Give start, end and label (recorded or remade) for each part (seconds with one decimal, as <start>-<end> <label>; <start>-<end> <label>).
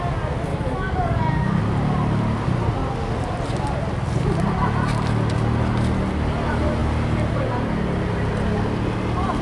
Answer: 0.0-0.5 recorded; 0.5-1.6 remade; 1.6-9.4 recorded